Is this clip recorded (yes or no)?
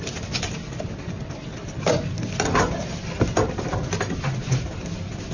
yes